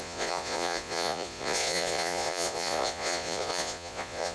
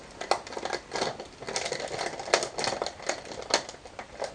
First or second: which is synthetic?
first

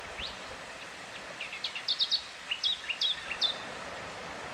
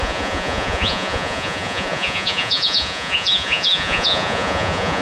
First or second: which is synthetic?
second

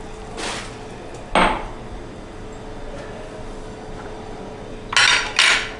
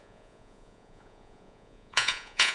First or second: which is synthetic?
second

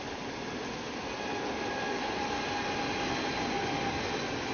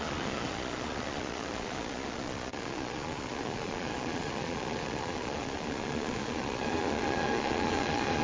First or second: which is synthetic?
second